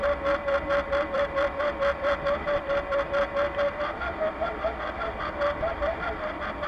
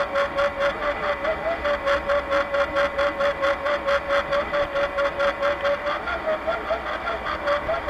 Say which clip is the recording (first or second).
second